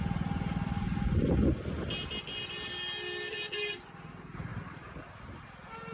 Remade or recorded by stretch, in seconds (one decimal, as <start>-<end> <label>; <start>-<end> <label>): 0.0-5.9 recorded